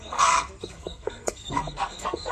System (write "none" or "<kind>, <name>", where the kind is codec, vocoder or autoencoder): codec, SNAC